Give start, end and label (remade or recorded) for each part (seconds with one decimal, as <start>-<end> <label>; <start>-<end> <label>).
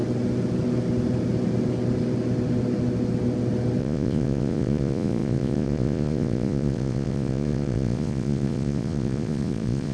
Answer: 0.0-3.8 recorded; 3.8-9.9 remade